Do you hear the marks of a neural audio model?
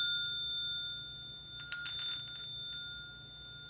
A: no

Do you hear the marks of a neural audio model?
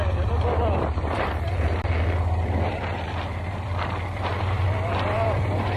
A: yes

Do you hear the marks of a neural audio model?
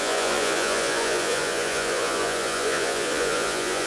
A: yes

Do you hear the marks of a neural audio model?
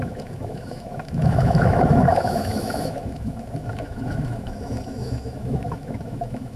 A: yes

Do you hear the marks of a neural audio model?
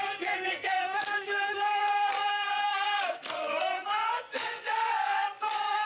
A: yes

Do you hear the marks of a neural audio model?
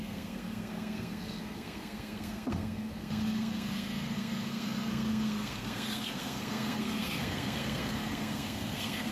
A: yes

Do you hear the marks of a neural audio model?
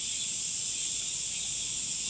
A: no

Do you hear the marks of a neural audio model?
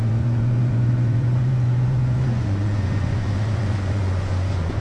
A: yes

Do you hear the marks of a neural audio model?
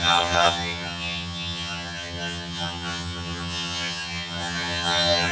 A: yes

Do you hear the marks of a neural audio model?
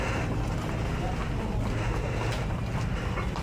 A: no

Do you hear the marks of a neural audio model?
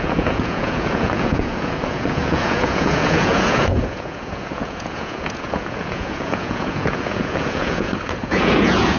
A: yes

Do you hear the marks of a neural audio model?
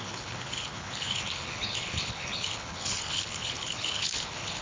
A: yes